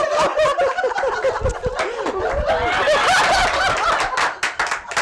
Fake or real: real